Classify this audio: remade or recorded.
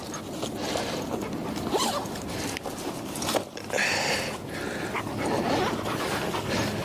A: recorded